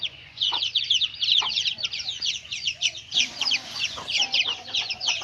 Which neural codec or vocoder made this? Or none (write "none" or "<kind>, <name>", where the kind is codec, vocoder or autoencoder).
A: vocoder, Vocos